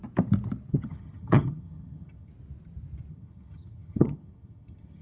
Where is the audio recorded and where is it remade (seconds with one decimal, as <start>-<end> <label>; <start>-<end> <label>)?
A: 0.0-0.7 recorded; 0.7-2.3 remade; 2.3-3.1 recorded; 3.1-5.0 remade